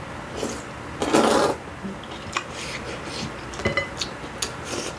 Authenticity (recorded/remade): recorded